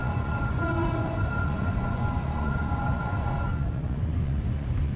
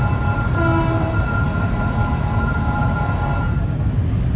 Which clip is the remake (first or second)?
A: first